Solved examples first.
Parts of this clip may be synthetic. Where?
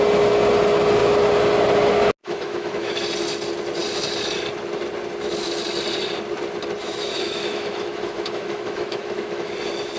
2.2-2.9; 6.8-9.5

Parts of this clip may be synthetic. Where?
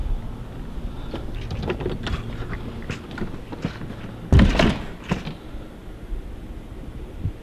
none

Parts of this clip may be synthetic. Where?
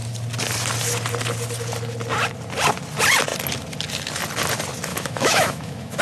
4.9-6.0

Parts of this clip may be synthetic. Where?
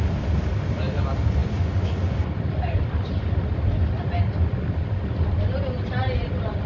none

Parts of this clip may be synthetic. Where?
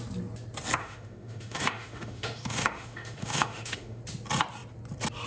0.8-4.0